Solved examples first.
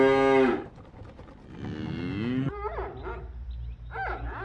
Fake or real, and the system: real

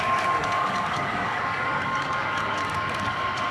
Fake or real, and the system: fake, codec, DAC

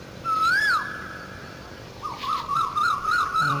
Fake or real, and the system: fake, vocoder, BigVGAN v2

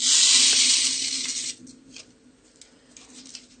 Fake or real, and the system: real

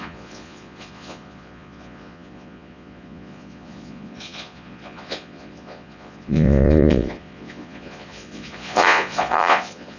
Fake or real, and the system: fake, vocoder, Vocos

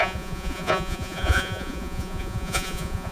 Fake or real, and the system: fake, vocoder, Vocos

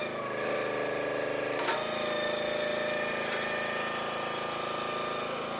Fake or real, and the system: real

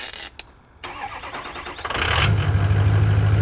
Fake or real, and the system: real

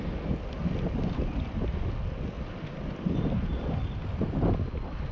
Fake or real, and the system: real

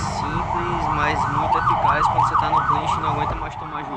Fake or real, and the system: real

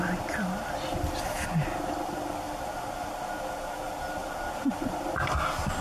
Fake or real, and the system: real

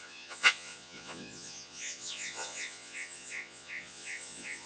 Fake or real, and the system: fake, vocoder, Vocos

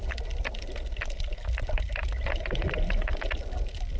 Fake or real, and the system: real